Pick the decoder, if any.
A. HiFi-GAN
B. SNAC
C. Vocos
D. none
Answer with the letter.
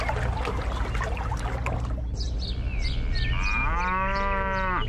D